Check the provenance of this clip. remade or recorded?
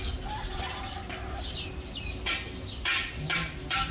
recorded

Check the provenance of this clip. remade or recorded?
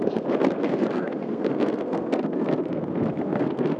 remade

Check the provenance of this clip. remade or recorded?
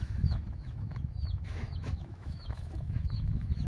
remade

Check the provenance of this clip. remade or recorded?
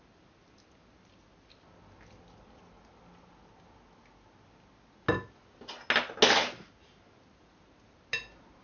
recorded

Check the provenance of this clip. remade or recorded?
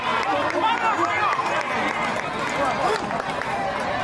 recorded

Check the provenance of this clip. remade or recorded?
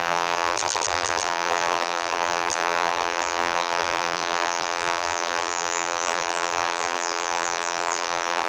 remade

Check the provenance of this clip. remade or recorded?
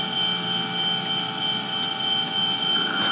recorded